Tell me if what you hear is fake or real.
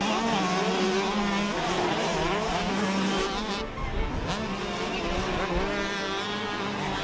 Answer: real